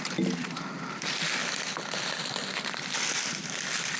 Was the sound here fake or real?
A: fake